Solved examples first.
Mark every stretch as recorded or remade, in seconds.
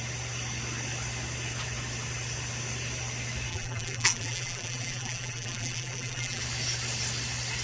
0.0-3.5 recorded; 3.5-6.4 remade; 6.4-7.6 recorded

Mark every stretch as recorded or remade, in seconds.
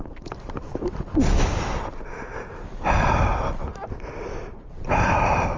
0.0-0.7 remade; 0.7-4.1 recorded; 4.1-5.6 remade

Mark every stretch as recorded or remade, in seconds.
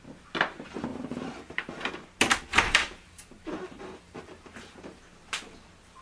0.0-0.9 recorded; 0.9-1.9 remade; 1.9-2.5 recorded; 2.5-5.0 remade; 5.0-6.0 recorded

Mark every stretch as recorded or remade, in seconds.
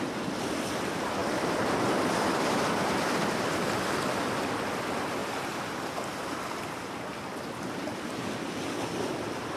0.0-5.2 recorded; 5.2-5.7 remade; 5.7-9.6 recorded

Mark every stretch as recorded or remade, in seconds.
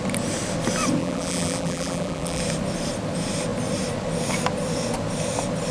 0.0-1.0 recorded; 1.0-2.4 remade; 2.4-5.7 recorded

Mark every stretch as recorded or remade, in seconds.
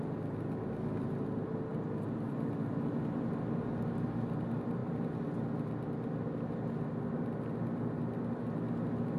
0.0-9.2 recorded